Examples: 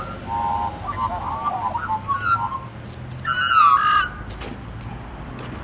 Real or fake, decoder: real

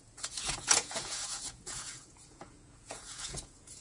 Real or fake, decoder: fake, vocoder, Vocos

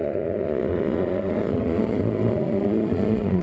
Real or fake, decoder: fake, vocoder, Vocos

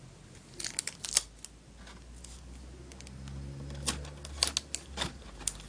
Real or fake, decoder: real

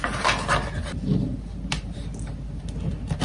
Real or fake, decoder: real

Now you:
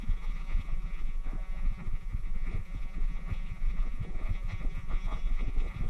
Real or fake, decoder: fake, vocoder, Vocos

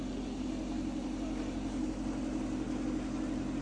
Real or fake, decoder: real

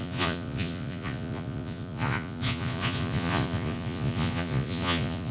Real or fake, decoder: fake, vocoder, Vocos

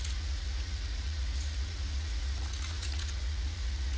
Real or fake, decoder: fake, vocoder, Vocos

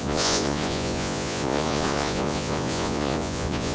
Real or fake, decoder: fake, vocoder, Vocos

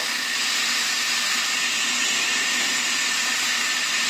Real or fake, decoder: real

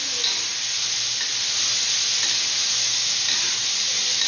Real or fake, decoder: real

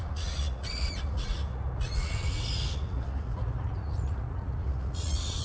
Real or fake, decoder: fake, vocoder, Vocos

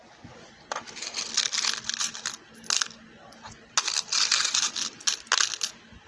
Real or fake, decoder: real